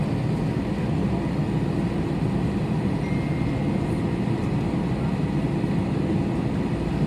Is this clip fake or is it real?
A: real